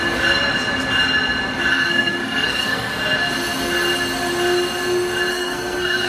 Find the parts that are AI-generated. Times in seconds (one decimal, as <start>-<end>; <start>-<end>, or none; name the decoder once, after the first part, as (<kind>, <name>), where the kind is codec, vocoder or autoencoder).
1.7-2.9 (codec, SNAC); 5.3-6.1